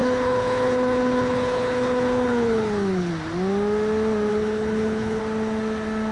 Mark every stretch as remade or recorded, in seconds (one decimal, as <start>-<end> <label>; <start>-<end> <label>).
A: 0.0-3.1 remade; 3.1-4.3 recorded; 4.3-5.2 remade; 5.2-6.1 recorded